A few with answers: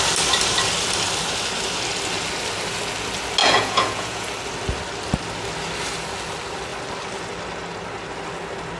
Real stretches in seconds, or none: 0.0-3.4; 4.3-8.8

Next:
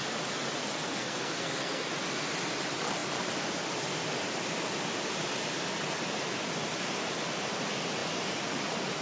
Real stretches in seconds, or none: 0.0-0.6; 1.9-9.0

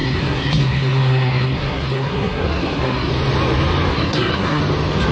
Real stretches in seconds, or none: 3.1-3.9; 4.6-5.1

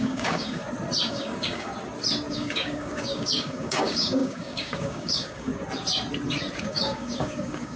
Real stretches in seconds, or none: 0.6-1.1; 1.7-2.3; 5.5-6.6

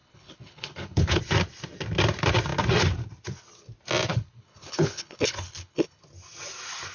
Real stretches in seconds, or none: 1.2-4.1; 6.0-6.9